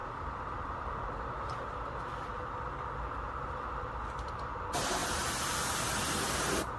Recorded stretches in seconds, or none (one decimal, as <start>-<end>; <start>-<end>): 0.0-3.4